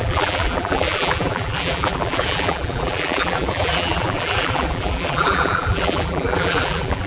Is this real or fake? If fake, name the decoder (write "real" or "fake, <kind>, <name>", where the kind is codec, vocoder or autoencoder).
fake, vocoder, BigVGAN v2